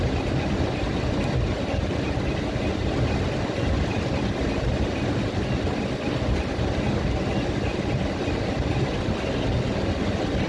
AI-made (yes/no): no